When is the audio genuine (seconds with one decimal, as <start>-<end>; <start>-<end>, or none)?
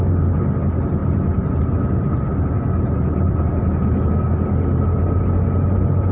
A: 0.0-6.1